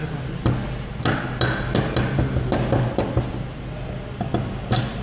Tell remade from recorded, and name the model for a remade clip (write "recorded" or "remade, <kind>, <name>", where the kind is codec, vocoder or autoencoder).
recorded